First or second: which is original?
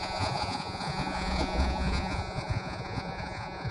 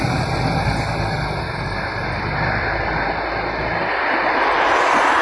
second